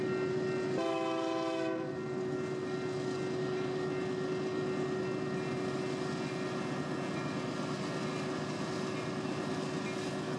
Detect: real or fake real